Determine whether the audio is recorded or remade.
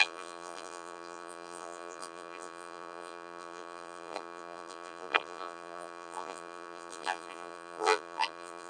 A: remade